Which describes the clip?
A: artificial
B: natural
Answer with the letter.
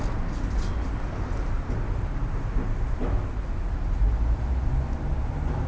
B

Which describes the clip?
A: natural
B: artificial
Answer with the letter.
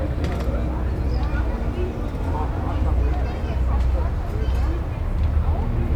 A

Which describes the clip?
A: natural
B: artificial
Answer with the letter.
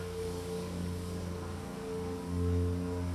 B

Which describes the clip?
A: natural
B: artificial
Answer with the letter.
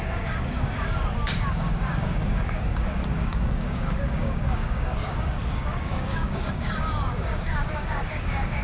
B